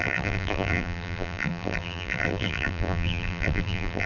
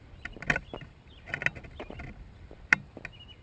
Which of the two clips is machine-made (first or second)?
first